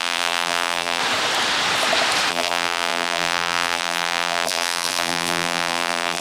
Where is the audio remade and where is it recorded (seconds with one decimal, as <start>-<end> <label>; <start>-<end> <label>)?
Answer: 0.0-1.0 remade; 1.0-2.3 recorded; 2.3-6.2 remade